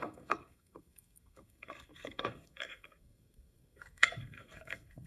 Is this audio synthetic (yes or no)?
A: yes